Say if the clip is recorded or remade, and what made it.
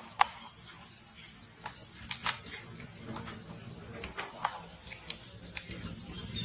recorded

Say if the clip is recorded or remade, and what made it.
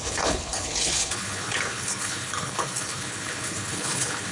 remade, codec, HILCodec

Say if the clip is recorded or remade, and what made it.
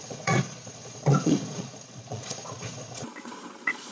remade, vocoder, Vocos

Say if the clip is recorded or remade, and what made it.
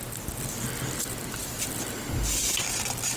recorded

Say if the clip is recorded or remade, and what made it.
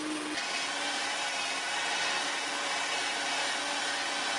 recorded